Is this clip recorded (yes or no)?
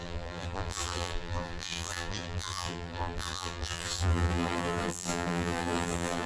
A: no